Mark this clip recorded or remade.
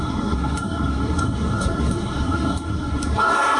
remade